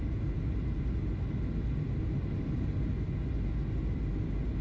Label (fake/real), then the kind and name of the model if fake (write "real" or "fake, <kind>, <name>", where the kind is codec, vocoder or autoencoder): real